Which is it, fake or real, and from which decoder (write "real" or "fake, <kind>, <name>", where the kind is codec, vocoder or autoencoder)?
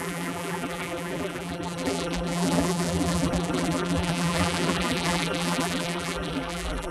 fake, vocoder, BigVGAN v2